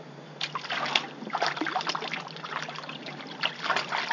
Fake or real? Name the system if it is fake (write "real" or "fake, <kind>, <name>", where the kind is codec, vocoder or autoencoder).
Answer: real